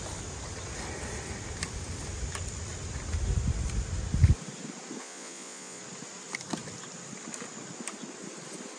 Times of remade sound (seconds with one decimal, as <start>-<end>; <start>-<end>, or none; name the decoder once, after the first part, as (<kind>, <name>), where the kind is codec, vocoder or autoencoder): 5.0-5.8 (vocoder, Vocos)